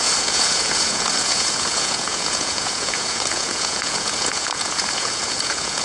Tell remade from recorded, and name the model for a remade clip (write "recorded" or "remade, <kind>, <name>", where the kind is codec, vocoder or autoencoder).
remade, vocoder, Vocos